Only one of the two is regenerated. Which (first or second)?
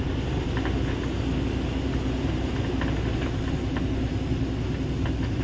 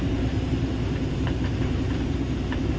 second